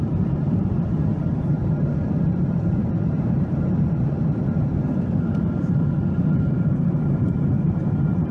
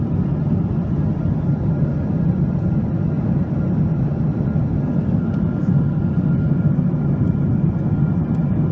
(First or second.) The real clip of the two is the second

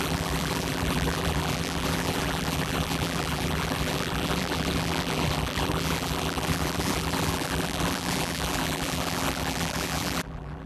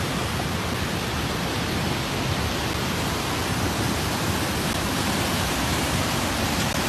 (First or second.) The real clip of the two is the second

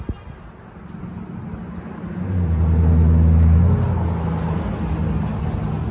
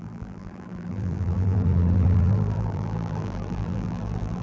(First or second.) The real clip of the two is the first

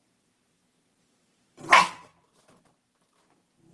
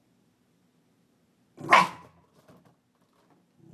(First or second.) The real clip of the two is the second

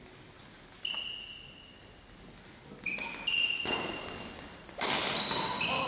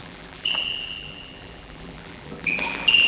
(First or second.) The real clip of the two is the first